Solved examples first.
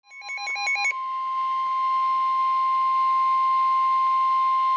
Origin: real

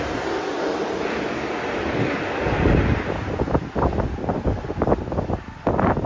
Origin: real